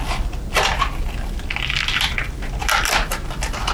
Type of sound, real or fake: real